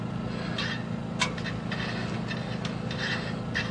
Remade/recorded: recorded